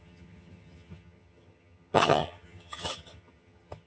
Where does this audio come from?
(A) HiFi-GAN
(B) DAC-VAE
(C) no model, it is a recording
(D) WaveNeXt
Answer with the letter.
A